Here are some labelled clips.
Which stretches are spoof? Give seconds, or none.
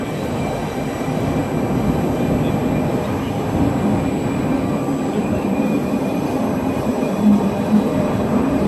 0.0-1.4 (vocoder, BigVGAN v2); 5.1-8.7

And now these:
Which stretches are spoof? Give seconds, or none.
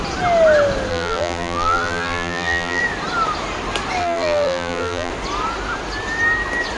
0.9-2.8 (vocoder, BigVGAN v2); 4.0-5.1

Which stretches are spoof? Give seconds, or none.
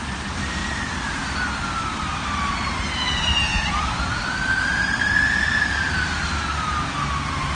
0.6-1.2 (vocoder, BigVGAN v2); 1.9-2.5; 3.5-4.3